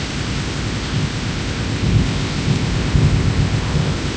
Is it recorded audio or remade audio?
remade